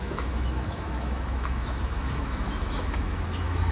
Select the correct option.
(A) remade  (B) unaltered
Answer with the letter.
A